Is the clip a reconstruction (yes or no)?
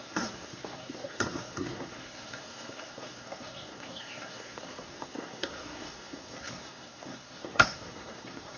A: yes